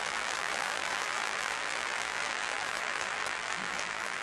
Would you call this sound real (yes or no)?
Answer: no